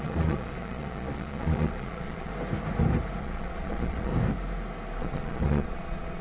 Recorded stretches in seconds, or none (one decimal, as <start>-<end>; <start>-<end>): 2.3-3.2; 4.1-5.0